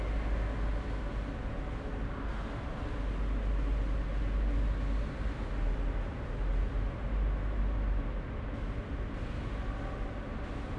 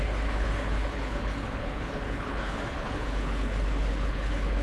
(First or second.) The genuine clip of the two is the first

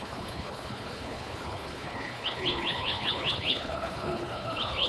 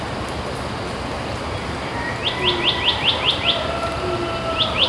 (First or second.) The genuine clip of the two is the second